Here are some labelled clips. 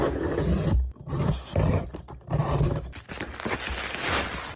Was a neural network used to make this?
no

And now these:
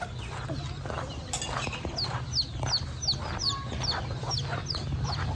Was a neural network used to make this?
no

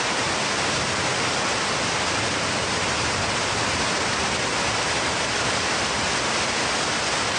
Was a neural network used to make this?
no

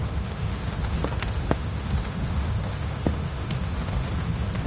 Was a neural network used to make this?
yes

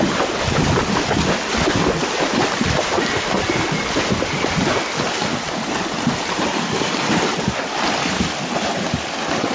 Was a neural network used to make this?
no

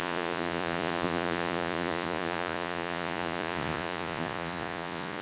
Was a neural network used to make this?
yes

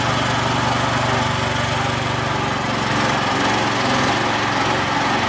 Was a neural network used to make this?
no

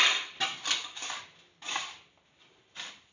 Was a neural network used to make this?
no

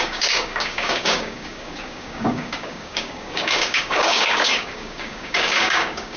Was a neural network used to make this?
yes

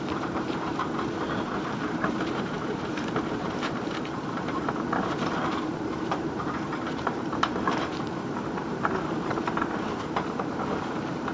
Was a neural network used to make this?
yes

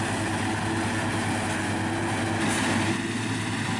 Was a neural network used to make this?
no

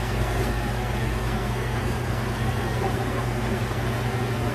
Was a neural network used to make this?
yes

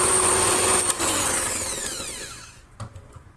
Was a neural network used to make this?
yes